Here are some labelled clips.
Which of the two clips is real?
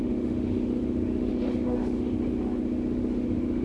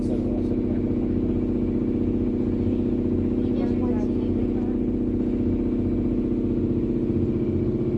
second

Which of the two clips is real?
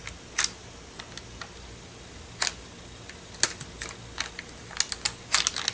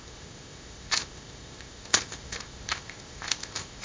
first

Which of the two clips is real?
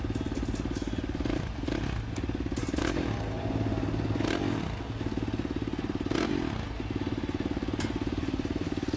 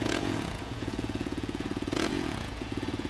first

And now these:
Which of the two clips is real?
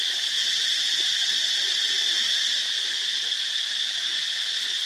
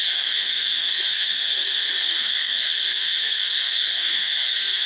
first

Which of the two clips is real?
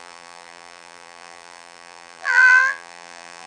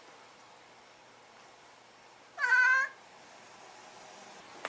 second